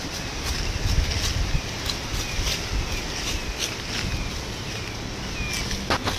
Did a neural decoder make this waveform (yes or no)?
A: no